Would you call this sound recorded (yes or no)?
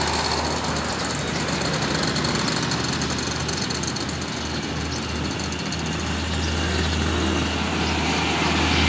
yes